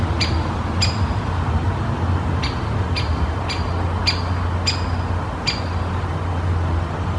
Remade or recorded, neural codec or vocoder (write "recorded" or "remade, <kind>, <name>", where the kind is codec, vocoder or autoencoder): recorded